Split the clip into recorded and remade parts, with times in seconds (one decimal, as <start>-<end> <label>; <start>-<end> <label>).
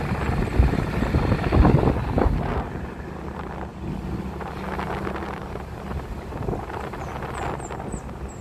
0.0-8.4 recorded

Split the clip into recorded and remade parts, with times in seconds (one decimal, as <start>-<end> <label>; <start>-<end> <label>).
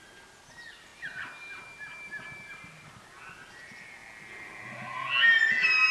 0.0-5.9 recorded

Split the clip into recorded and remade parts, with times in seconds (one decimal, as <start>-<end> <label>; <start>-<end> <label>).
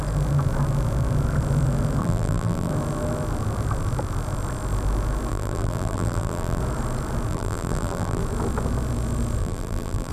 0.0-2.0 recorded; 2.0-2.7 remade; 2.7-5.3 recorded; 5.3-6.6 remade; 6.6-7.3 recorded; 7.3-8.2 remade; 8.2-9.4 recorded; 9.4-10.1 remade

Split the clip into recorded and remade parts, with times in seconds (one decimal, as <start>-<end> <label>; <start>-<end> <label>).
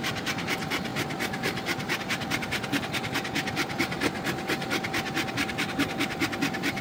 0.0-6.8 recorded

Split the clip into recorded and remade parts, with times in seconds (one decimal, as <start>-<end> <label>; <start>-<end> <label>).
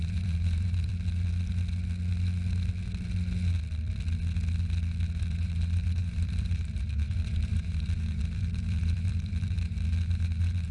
0.0-0.9 remade; 0.9-5.2 recorded; 5.2-10.7 remade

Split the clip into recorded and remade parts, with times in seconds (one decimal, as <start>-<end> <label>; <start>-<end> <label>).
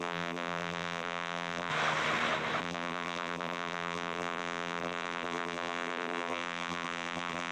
0.0-1.7 remade; 1.7-2.6 recorded; 2.6-7.5 remade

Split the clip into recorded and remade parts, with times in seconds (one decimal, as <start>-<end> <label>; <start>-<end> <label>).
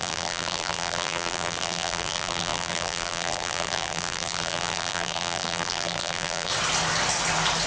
0.0-6.5 remade; 6.5-7.7 recorded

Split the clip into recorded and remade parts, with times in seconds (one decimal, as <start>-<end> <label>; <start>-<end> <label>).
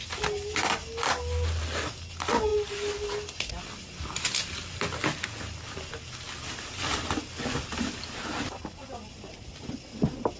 0.0-10.4 recorded